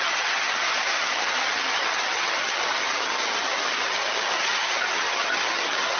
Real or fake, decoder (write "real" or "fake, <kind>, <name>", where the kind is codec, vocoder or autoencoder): fake, vocoder, HiFi-GAN